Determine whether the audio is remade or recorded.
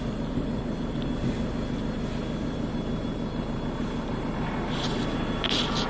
recorded